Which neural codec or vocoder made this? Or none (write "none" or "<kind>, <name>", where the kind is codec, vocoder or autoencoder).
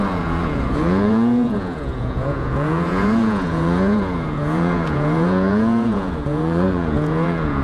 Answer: vocoder, Vocos